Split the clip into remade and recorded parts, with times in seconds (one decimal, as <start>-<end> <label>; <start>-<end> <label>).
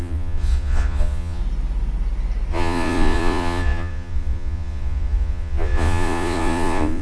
0.0-1.4 remade; 1.4-2.5 recorded; 2.5-7.0 remade